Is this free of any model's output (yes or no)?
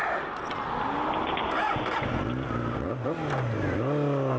yes